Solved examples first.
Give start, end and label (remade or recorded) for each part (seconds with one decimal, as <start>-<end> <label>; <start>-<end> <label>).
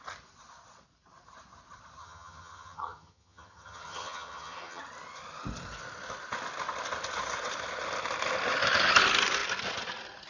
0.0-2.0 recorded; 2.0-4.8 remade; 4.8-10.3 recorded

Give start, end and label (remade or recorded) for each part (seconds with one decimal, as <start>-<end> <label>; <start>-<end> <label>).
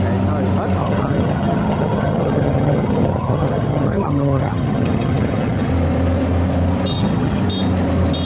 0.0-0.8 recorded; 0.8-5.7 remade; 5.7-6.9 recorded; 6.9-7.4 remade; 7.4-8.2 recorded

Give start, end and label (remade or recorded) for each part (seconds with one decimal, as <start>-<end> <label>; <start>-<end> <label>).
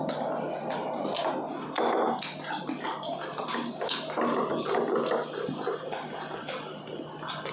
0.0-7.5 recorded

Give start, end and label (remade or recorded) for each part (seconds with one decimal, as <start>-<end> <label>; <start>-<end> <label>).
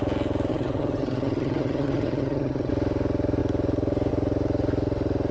0.0-0.5 recorded; 0.5-2.7 remade; 2.7-5.3 recorded